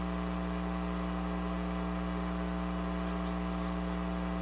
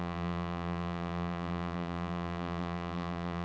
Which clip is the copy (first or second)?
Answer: second